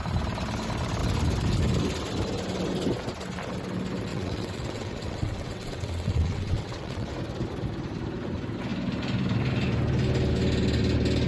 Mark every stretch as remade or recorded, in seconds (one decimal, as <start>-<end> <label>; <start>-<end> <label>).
0.0-4.1 recorded; 4.1-7.1 remade; 7.1-11.3 recorded